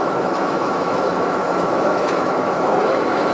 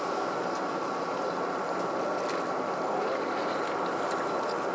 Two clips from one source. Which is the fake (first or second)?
first